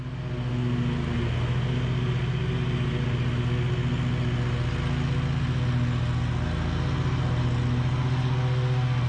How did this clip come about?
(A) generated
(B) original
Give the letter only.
B